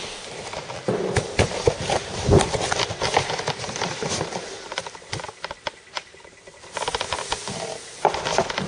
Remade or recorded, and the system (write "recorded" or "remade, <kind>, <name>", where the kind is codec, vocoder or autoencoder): remade, vocoder, BigVGAN v2